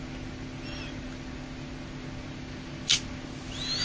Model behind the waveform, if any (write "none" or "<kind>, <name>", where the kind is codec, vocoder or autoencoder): none